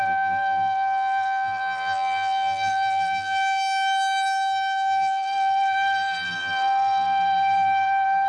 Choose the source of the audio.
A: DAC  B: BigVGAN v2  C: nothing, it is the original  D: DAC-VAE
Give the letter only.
B